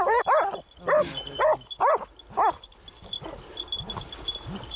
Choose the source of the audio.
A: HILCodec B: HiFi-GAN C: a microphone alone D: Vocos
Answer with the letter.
C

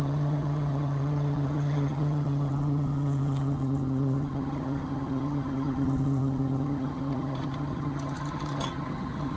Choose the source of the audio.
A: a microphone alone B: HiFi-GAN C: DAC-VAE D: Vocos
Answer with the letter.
B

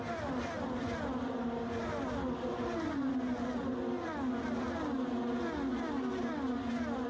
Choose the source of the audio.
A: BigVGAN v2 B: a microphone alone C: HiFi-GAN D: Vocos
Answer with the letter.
B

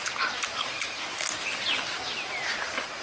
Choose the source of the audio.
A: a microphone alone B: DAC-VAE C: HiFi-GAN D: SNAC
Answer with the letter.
A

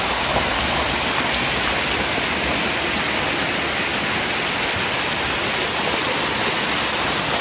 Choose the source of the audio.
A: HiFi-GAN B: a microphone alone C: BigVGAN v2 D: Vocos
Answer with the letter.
B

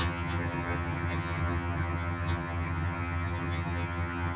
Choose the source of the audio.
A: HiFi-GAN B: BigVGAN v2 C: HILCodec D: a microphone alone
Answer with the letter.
A